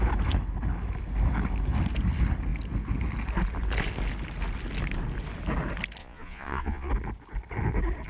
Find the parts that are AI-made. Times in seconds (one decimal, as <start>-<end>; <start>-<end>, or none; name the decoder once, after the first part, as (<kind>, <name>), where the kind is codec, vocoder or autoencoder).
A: 6.0-6.9 (vocoder, Vocos)